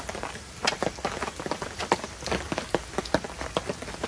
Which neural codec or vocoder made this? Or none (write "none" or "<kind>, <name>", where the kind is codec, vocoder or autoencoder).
none